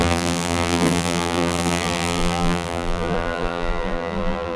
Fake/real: fake